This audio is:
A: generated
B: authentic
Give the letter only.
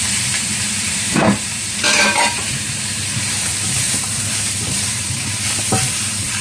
A